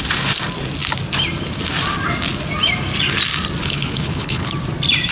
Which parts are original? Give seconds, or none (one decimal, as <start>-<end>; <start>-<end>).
0.0-3.6; 4.5-5.1